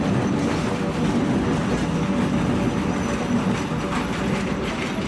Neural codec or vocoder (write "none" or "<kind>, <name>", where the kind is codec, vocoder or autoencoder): none